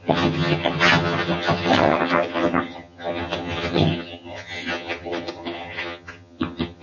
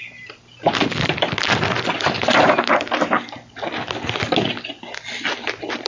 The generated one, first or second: first